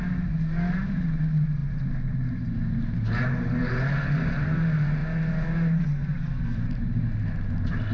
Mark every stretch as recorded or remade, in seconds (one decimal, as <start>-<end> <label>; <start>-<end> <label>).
0.0-7.9 recorded

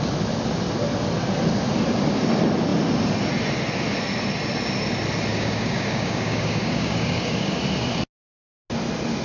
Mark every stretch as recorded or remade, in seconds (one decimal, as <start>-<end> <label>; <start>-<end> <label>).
0.0-5.3 recorded; 5.3-7.6 remade; 7.6-9.2 recorded

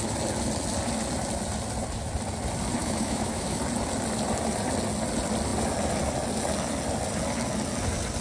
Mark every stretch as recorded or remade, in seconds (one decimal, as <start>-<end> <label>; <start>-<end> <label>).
0.0-2.8 recorded; 2.8-3.6 remade; 3.6-8.2 recorded